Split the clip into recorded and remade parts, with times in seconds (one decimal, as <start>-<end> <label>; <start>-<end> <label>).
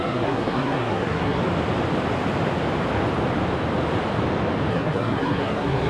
0.0-1.4 remade; 1.4-4.7 recorded; 4.7-5.9 remade